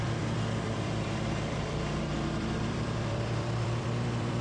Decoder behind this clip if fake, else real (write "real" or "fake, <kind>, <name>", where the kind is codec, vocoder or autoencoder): fake, vocoder, BigVGAN v2